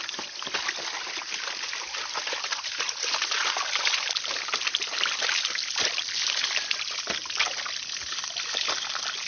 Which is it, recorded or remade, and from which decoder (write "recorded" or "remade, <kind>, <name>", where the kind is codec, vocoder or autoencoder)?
recorded